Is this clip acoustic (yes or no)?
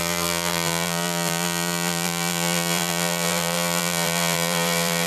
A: no